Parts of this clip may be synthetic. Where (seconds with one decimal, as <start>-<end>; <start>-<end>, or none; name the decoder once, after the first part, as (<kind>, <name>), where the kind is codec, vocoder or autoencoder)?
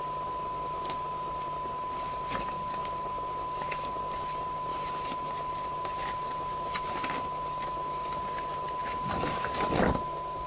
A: none